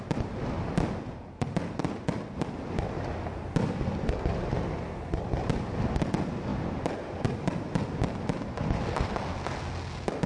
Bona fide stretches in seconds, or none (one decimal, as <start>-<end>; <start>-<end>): 0.0-10.3